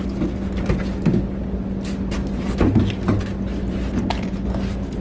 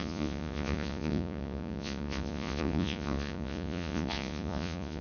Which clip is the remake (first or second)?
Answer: second